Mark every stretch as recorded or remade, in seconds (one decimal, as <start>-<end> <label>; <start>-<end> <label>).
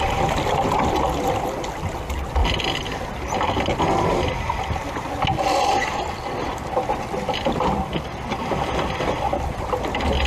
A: 0.0-10.3 recorded